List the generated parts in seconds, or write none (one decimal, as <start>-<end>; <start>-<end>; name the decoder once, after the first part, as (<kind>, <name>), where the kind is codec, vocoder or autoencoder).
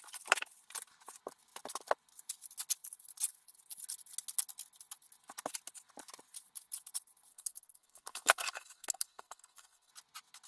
7.3-9.9 (codec, SNAC)